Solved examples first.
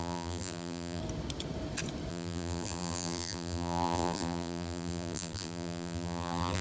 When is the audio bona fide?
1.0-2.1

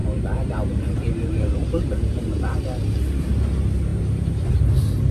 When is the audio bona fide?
2.4-3.9; 4.5-5.1

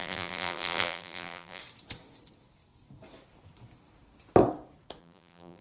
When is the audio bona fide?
1.6-5.0

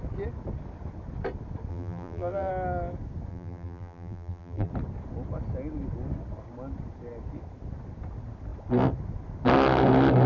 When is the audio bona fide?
0.0-1.7; 2.5-3.3; 4.7-10.3

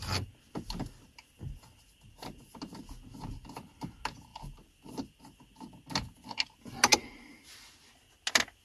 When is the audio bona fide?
0.0-4.3; 5.2-8.6

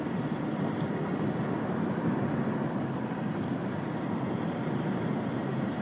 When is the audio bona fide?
1.0-4.5